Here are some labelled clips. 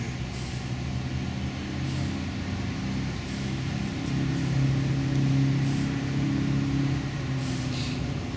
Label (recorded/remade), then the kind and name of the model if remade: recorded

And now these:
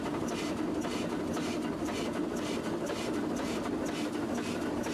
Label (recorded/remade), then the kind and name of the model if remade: recorded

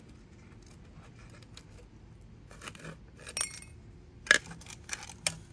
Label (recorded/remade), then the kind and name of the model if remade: recorded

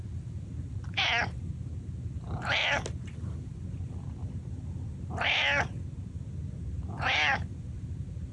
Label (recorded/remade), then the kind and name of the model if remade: recorded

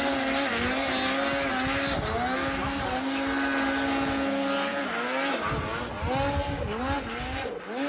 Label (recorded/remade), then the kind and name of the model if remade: recorded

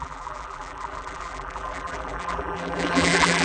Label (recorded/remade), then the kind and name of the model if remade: remade, vocoder, BigVGAN v2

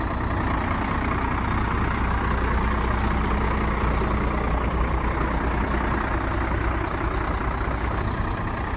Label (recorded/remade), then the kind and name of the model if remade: recorded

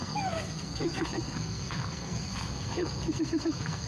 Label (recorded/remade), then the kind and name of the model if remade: remade, codec, SNAC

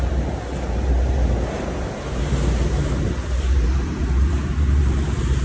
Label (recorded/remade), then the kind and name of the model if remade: remade, vocoder, BigVGAN v2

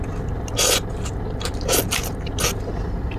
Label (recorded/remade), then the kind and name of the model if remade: recorded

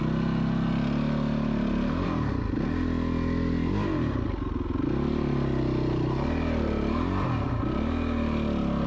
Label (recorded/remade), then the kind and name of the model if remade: recorded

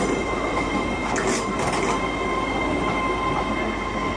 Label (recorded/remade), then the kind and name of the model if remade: recorded